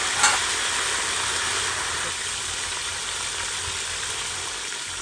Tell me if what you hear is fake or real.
real